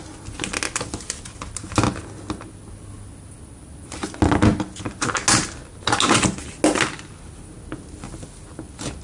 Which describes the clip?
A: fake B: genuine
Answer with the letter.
B